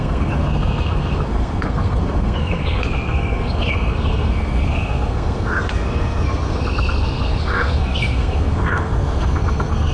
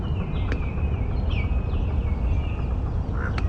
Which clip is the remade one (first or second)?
first